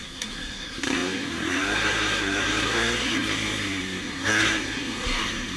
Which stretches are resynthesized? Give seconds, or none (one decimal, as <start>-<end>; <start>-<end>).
0.0-5.6